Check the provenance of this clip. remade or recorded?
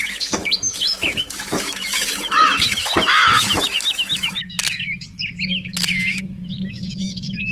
remade